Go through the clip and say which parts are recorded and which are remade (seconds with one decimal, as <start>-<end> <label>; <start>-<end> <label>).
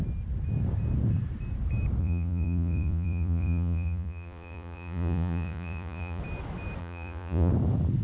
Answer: 0.0-2.0 recorded; 2.0-6.2 remade; 6.2-6.8 recorded; 6.8-7.5 remade; 7.5-8.0 recorded